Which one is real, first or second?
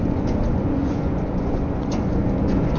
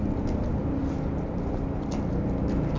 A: second